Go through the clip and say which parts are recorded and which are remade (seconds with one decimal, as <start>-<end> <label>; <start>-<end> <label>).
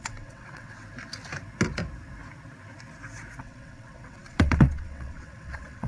0.0-0.8 remade; 0.8-3.4 recorded; 3.4-5.9 remade